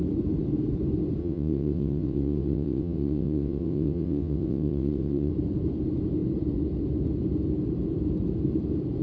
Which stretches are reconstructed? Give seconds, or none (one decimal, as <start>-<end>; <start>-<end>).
1.2-5.3